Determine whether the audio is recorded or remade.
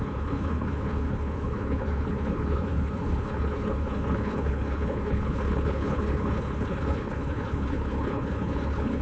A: remade